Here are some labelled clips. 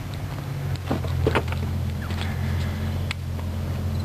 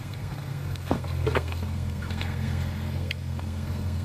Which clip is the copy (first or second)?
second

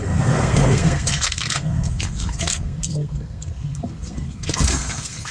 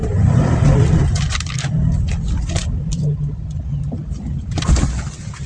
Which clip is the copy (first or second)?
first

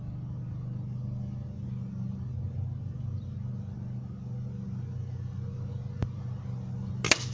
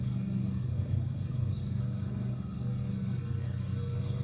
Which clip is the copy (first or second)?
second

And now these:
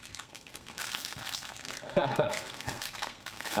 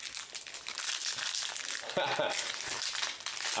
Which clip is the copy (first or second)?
first